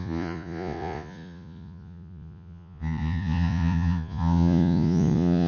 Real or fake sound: fake